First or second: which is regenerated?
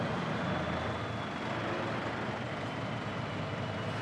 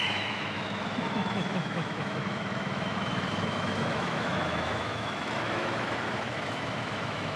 second